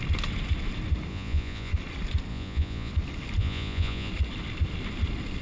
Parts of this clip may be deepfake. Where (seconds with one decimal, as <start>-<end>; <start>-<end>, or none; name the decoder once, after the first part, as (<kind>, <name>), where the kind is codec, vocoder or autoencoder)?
1.1-1.7 (vocoder, Vocos); 2.3-2.9; 3.4-4.1